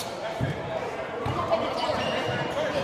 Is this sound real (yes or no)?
no